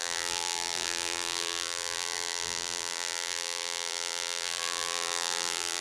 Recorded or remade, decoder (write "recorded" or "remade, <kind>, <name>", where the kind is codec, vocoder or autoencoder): remade, vocoder, BigVGAN v2